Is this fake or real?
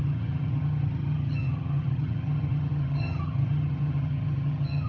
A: fake